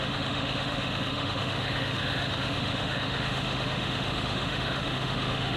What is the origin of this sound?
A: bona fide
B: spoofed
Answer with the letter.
B